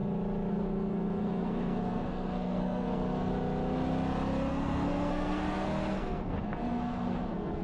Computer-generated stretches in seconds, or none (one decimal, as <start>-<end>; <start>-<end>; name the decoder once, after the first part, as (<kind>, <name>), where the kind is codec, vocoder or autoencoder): 0.5-3.3 (codec, SNAC); 4.5-7.6